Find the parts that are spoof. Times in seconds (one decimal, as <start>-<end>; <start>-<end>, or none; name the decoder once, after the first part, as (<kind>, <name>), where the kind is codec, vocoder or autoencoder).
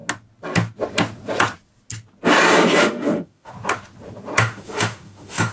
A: 2.8-3.5 (autoencoder, DAC-VAE); 4.4-5.5